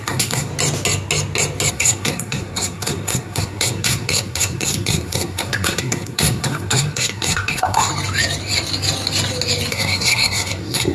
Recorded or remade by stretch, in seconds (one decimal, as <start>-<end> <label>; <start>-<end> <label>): 0.0-0.5 remade; 0.5-1.7 recorded; 1.7-7.9 remade; 7.9-9.7 recorded; 9.7-10.9 remade